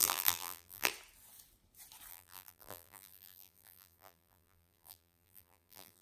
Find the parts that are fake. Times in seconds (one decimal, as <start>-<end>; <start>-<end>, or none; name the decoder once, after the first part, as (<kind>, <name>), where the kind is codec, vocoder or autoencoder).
0.0-0.9 (vocoder, BigVGAN v2); 2.1-6.0